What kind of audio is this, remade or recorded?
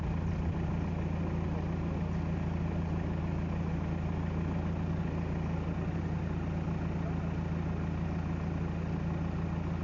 recorded